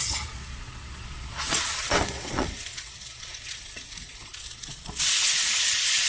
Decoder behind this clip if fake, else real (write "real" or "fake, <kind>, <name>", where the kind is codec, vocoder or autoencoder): fake, vocoder, Vocos